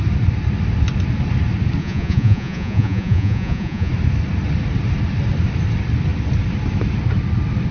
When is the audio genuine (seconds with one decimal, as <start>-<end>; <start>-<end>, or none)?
0.0-1.8; 3.9-7.7